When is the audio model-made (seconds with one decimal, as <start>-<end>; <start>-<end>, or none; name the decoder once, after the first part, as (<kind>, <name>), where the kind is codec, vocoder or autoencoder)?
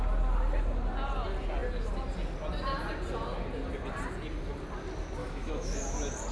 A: 5.2-5.8 (autoencoder, DAC-VAE)